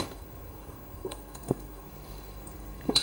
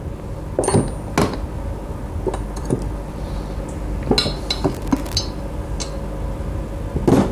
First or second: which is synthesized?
first